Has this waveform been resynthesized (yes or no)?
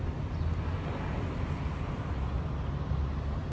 no